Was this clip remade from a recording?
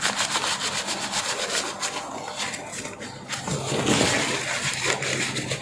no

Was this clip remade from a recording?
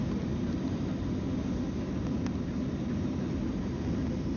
no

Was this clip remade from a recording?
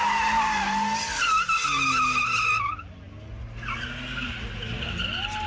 no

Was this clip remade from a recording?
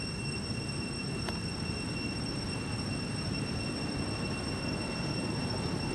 no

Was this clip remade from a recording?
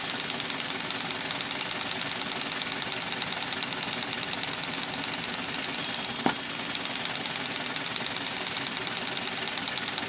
no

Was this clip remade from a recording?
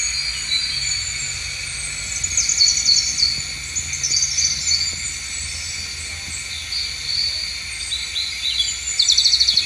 no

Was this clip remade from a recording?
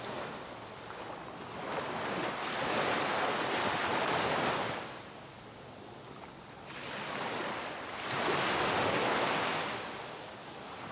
no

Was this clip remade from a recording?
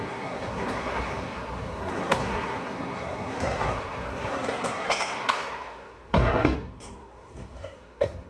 yes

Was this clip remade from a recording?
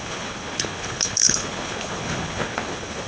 yes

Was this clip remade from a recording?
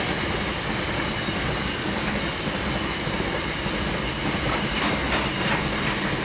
no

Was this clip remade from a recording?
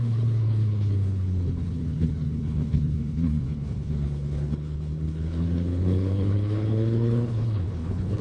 yes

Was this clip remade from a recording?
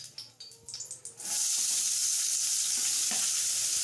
no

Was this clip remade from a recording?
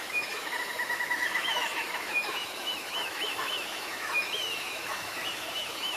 yes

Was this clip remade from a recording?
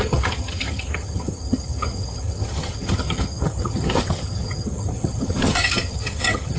yes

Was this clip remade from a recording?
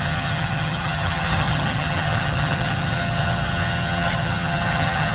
yes